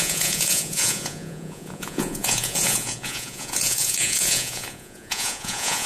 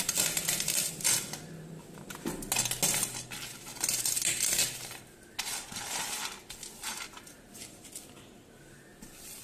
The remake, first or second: first